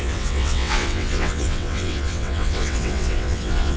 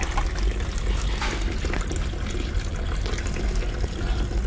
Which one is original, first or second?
second